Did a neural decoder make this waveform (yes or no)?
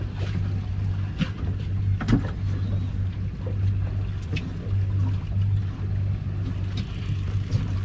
no